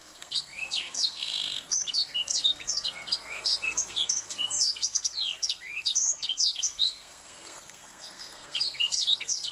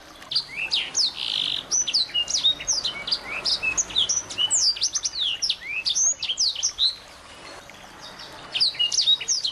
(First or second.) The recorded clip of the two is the second